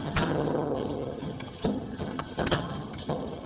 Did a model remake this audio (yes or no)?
yes